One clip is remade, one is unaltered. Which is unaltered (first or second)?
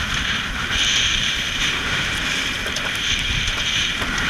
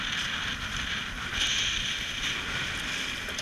second